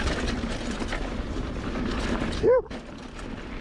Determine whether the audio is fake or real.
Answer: fake